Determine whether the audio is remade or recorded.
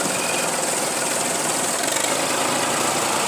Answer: recorded